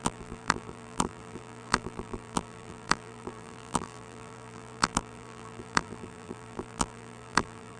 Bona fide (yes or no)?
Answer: no